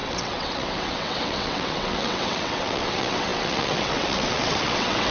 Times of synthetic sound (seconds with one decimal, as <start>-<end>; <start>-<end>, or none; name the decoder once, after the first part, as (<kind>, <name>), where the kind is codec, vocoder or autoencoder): 0.0-5.1 (vocoder, WaveNeXt)